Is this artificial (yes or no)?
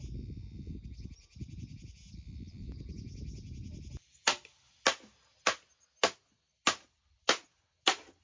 no